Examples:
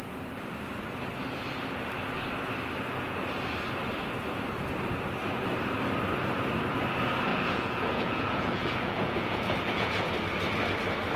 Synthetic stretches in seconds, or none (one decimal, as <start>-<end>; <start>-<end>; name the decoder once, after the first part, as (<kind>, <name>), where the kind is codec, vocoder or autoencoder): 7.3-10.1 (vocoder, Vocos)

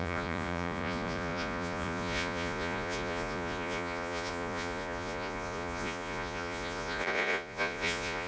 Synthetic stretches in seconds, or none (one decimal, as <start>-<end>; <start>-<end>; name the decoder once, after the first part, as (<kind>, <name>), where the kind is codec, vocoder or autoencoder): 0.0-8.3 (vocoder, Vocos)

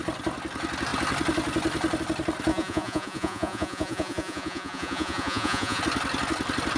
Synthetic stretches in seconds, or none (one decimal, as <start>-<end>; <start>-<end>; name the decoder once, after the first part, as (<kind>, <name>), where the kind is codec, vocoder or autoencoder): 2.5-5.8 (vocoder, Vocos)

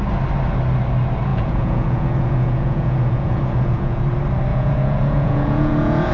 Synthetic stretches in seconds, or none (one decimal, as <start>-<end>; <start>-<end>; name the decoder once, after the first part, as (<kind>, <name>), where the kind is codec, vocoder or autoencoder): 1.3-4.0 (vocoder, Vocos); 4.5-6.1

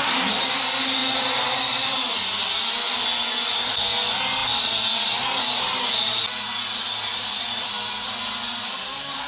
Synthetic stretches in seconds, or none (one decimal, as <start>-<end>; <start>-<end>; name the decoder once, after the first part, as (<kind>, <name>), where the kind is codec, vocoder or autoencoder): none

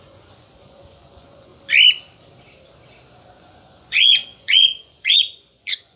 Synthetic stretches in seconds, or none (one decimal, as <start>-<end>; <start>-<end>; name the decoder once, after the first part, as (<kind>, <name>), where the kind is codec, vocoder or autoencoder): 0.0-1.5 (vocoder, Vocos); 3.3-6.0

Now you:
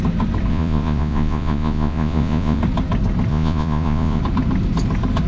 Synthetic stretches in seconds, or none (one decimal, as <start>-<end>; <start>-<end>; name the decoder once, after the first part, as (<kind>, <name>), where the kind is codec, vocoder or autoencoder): 0.5-2.6 (vocoder, Vocos); 3.3-4.2